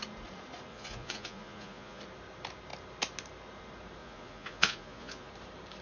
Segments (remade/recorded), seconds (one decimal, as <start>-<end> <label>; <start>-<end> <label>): 0.0-0.7 recorded; 0.7-2.0 remade; 2.0-4.0 recorded; 4.0-5.3 remade; 5.3-5.8 recorded